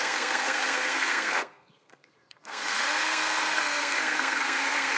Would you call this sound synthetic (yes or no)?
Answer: yes